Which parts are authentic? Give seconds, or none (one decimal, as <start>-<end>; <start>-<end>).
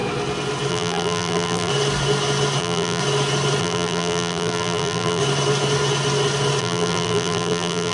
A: 0.0-0.7; 1.7-2.6; 3.0-3.6; 5.2-6.6